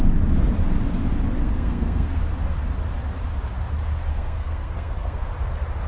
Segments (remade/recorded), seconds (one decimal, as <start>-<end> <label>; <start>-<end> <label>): 0.0-1.4 recorded; 1.4-2.2 remade; 2.2-4.1 recorded; 4.1-5.3 remade; 5.3-5.9 recorded